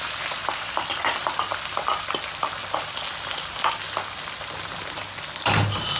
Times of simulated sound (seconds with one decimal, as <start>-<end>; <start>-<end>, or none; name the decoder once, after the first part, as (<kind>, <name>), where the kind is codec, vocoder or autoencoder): none